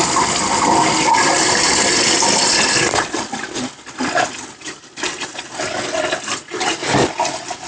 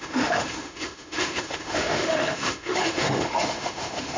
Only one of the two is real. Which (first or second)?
first